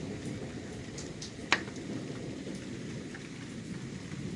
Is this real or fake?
real